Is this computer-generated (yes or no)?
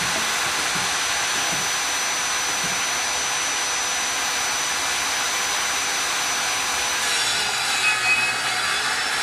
no